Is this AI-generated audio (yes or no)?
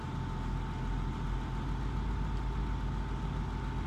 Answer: no